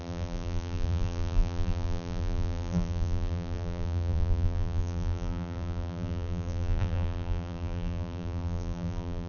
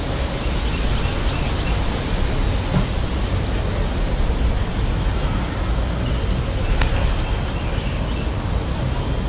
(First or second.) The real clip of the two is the second